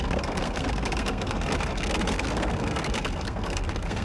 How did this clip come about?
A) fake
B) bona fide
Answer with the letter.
A